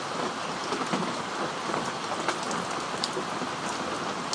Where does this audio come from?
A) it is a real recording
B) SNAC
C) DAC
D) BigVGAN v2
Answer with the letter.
A